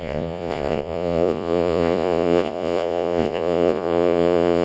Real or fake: fake